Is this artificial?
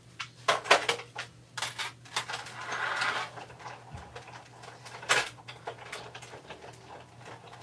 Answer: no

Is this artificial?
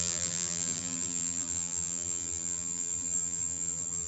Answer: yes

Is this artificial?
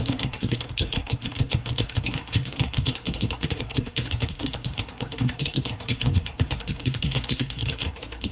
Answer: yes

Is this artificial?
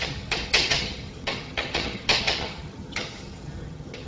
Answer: yes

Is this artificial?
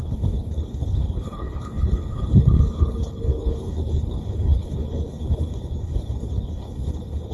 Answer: yes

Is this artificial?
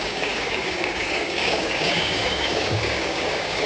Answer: yes